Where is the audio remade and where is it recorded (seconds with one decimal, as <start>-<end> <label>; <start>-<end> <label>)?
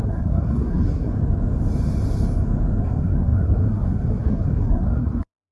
0.0-1.1 remade; 1.1-2.8 recorded; 2.8-5.5 remade